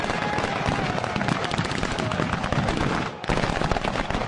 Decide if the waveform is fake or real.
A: real